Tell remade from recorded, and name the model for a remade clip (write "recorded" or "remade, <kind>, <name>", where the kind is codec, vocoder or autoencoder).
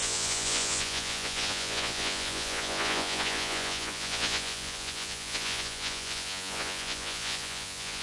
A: remade, vocoder, Vocos